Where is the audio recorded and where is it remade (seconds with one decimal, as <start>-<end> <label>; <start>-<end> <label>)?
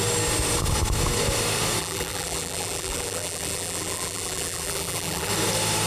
0.0-1.8 recorded; 1.8-5.3 remade; 5.3-5.9 recorded